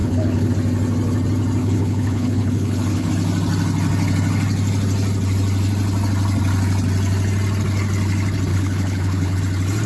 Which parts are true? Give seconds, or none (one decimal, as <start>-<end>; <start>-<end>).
0.5-1.6; 3.1-8.5; 9.4-9.9